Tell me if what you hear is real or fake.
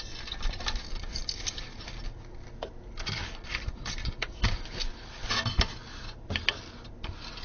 real